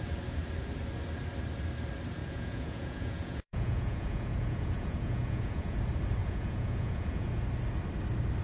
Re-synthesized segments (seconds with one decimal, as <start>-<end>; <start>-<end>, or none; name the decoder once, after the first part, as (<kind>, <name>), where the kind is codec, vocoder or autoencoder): 2.2-5.8 (vocoder, Vocos); 6.2-7.4